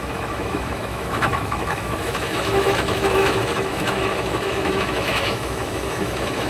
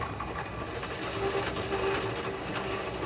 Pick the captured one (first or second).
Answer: second